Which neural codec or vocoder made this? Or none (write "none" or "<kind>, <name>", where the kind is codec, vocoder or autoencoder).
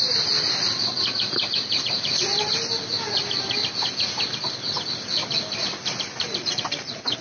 none